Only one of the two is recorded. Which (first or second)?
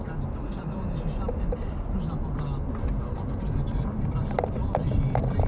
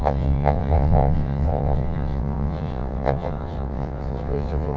first